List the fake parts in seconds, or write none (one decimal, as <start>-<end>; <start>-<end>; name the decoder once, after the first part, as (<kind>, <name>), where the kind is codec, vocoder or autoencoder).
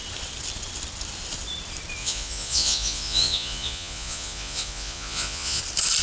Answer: 2.0-5.6 (vocoder, Vocos)